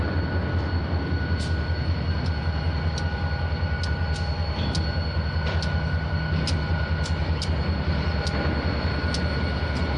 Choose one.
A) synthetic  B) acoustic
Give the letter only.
B